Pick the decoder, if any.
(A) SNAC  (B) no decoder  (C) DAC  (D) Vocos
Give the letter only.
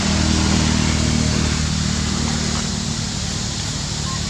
B